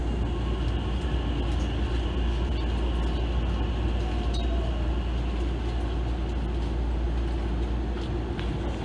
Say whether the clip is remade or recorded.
recorded